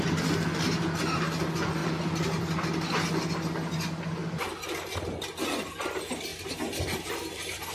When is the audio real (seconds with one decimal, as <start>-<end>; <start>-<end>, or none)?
0.0-7.7